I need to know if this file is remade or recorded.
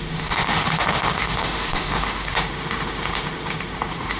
remade